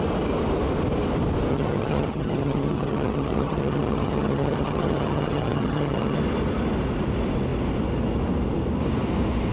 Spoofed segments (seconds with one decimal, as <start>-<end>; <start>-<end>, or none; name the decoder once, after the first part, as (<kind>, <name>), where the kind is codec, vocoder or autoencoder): 1.5-6.2 (vocoder, HiFi-GAN)